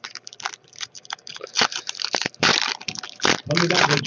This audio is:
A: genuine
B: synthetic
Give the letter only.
B